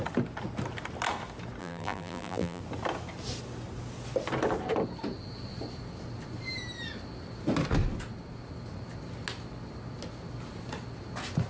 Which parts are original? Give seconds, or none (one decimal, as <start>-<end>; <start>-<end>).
0.0-1.6; 2.6-11.5